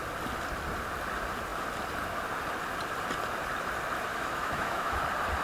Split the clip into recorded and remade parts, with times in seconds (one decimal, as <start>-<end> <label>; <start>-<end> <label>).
0.0-4.1 recorded; 4.1-5.0 remade; 5.0-5.4 recorded